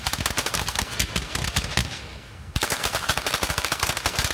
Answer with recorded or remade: remade